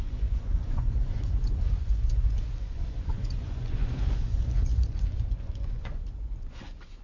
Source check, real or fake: fake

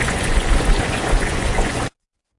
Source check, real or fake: fake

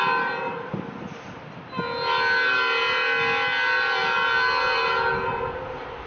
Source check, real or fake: real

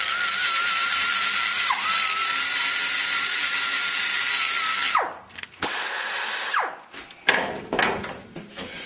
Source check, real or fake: real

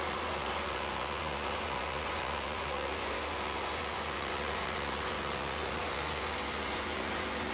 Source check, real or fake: fake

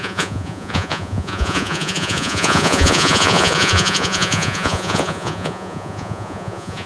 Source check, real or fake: fake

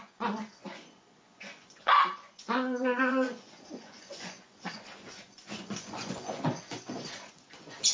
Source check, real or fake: fake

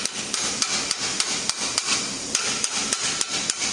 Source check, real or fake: real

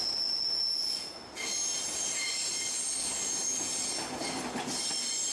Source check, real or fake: real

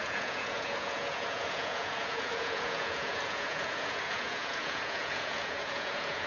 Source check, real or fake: fake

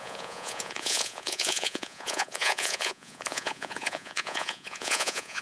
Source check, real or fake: fake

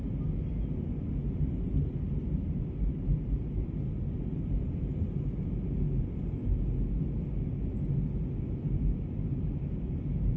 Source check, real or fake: real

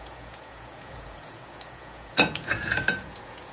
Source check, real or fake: fake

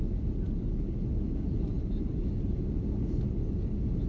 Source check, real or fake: real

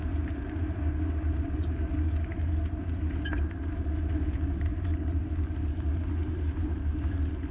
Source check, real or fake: real